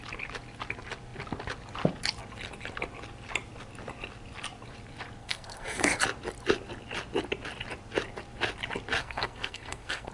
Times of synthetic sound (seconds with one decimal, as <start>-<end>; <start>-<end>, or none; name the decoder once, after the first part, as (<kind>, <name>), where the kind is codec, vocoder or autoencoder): 5.2-6.0 (codec, SNAC); 9.0-10.1